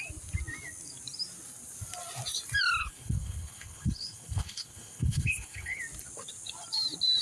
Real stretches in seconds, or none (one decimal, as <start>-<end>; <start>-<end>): 0.0-2.8; 5.8-7.2